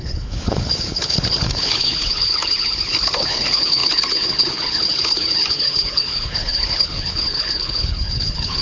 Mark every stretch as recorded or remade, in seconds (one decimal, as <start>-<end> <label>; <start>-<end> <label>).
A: 0.0-8.6 remade